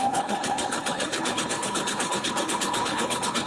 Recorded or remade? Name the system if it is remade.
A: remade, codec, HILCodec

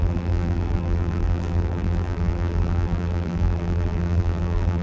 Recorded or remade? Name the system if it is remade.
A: remade, vocoder, BigVGAN v2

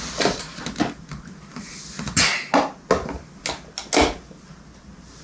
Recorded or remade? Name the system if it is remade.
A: recorded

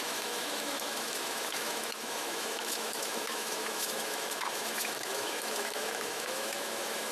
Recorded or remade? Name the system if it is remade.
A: remade, autoencoder, DAC-VAE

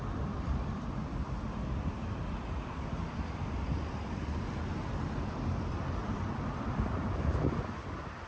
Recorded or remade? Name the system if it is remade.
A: remade, vocoder, BigVGAN v2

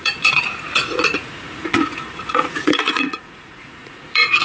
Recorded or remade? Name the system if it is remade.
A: remade, vocoder, Vocos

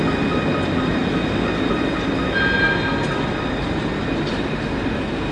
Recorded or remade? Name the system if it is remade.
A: recorded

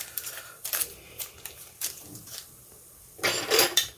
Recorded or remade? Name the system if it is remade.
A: remade, vocoder, BigVGAN v2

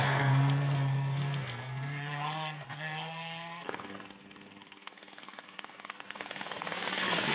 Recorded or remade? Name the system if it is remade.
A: remade, codec, SNAC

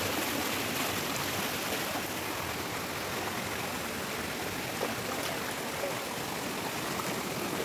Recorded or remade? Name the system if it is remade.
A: recorded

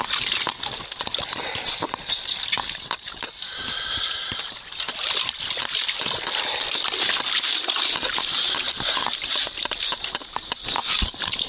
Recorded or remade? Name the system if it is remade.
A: recorded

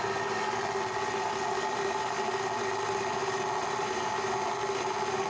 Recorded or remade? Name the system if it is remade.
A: recorded